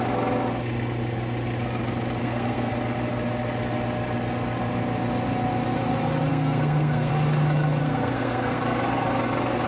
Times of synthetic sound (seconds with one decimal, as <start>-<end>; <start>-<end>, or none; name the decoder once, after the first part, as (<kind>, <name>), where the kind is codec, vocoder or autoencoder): 2.2-2.7 (codec, SNAC); 6.3-7.1; 7.8-8.6